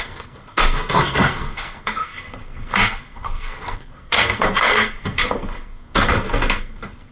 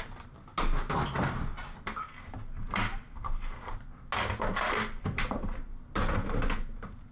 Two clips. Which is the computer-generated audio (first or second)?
first